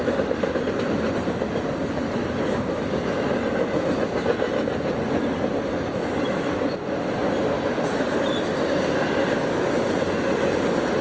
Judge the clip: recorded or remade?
recorded